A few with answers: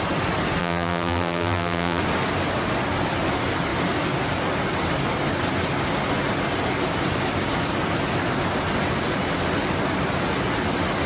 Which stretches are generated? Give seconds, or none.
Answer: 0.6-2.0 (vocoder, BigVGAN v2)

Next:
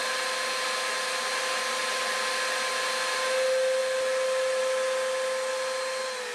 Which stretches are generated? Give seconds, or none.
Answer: none

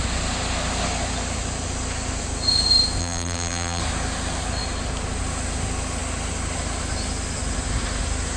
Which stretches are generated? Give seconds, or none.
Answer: 3.0-3.8 (vocoder, BigVGAN v2)

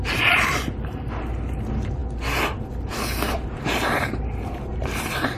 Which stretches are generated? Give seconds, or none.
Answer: 0.0-2.0 (vocoder, BigVGAN v2); 2.8-5.4